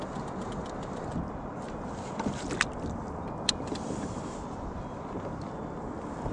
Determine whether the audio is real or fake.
real